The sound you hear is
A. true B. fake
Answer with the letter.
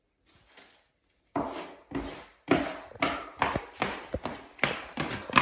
B